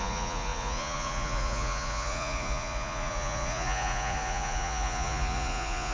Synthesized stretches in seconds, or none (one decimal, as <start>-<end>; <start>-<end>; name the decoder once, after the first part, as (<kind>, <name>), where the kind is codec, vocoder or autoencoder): 0.0-5.9 (vocoder, Vocos)